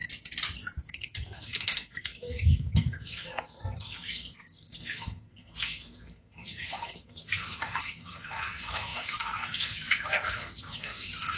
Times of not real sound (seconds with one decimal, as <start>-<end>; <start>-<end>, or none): 0.9-11.4